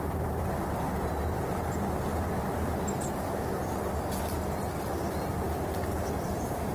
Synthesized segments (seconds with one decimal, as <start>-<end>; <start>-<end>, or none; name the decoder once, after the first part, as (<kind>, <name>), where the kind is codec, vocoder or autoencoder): 0.0-2.1 (vocoder, BigVGAN v2); 6.1-6.7